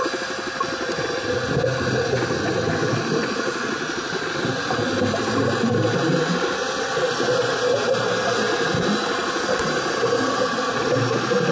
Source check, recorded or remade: recorded